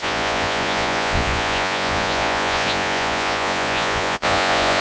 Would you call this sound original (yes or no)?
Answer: no